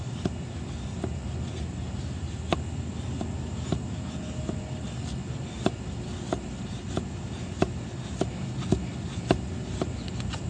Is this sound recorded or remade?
recorded